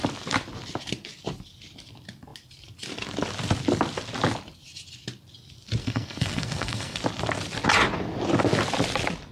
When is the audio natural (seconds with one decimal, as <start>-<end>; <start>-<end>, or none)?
0.0-5.8; 7.0-9.3

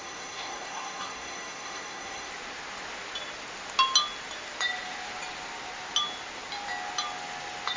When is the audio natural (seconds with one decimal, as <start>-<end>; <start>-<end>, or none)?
2.3-7.8

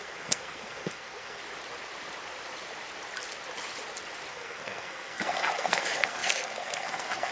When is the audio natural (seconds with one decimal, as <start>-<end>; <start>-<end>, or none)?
1.4-4.3

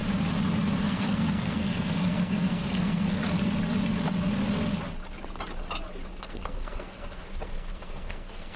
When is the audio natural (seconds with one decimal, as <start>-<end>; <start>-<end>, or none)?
0.0-0.8; 3.2-6.1

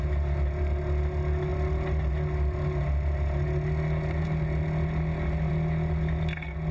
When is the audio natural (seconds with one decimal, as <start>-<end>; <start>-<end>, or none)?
0.0-6.7